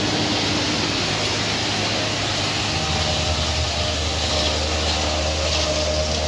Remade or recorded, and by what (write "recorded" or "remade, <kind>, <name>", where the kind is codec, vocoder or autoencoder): recorded